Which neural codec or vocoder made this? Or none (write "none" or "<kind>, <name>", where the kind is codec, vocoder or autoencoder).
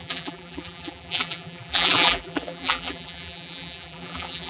vocoder, BigVGAN v2